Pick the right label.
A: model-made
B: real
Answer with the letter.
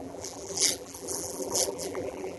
A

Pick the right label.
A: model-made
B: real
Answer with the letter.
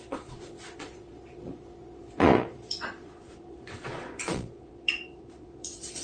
A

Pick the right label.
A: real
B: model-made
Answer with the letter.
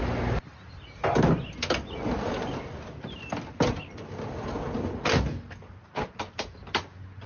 A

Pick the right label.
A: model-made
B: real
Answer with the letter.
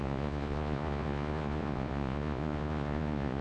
A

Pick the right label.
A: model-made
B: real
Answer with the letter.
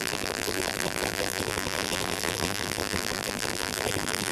A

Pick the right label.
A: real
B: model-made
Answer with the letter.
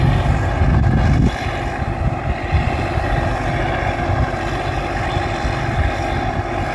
A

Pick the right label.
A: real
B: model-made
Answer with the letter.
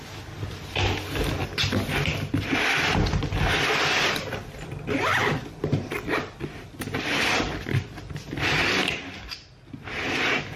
A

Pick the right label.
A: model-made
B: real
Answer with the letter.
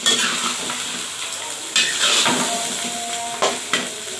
B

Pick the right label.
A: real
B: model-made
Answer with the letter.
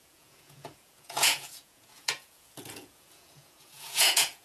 B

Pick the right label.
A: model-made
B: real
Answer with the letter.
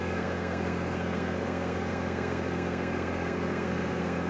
A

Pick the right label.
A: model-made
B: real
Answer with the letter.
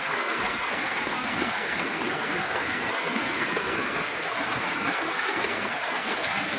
A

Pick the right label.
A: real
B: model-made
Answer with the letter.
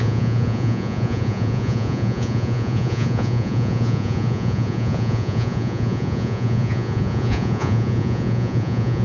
B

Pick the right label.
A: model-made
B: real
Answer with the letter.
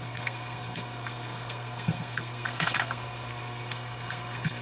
A